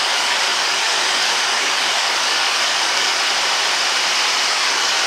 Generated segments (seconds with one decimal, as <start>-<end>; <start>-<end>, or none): 0.0-3.1; 4.5-5.1